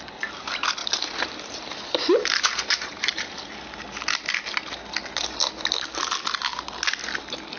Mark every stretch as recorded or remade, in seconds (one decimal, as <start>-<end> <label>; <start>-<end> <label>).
0.0-0.8 recorded; 0.8-3.3 remade; 3.3-7.6 recorded